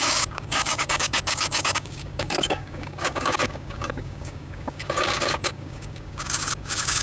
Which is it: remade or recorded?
remade